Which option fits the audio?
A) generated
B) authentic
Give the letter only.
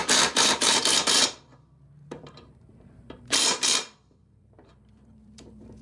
A